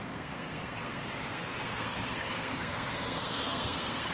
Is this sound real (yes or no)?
no